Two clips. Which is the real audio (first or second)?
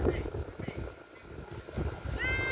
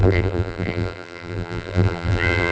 first